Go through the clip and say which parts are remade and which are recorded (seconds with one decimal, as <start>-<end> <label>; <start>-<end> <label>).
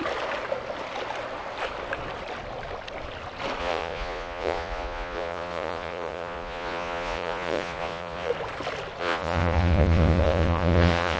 0.0-3.6 recorded; 3.6-8.3 remade; 8.3-9.0 recorded; 9.0-11.2 remade